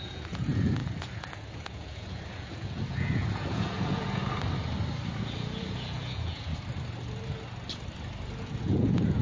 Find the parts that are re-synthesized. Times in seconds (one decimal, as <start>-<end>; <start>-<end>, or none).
0.0-4.2; 5.6-6.5; 8.6-9.2